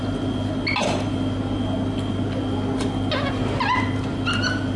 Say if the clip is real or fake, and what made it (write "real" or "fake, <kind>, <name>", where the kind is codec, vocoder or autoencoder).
real